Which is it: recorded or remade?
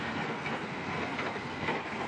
remade